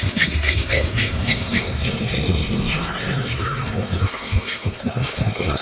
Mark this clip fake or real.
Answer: fake